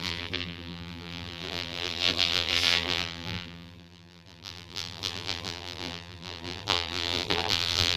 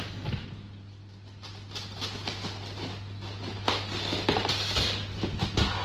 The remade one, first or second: first